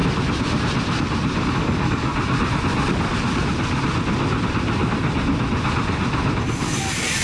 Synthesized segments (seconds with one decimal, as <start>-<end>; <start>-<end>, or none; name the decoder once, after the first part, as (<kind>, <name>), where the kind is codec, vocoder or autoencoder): 1.5-2.1 (codec, DAC); 6.4-7.2